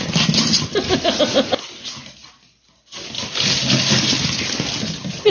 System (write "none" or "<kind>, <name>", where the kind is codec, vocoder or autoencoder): none